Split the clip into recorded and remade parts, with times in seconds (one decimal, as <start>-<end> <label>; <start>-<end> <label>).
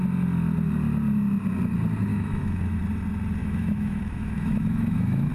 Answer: 0.0-2.1 recorded; 2.1-2.8 remade; 2.8-3.4 recorded; 3.4-5.3 remade